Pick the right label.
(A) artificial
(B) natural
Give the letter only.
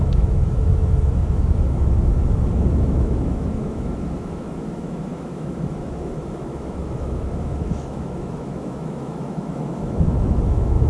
A